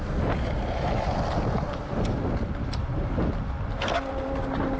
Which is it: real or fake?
real